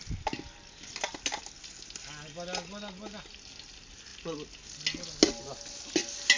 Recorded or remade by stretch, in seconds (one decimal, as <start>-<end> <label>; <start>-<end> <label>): 0.0-6.4 recorded